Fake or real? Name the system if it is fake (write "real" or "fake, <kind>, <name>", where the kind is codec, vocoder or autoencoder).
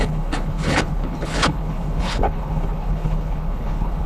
fake, codec, HILCodec